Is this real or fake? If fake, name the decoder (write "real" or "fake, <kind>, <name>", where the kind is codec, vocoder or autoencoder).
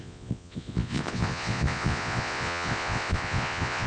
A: fake, vocoder, Vocos